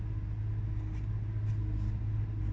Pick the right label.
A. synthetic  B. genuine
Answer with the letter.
B